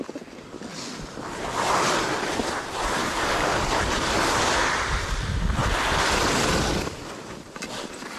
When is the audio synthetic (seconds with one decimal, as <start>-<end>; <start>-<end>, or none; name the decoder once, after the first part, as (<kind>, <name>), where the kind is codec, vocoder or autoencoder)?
3.0-3.5 (codec, DAC)